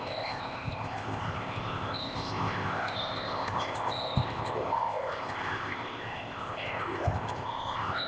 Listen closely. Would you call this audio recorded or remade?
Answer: remade